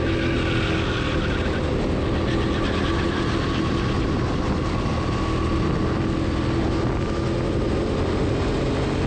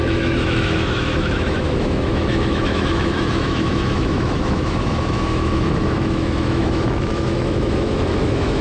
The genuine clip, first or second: first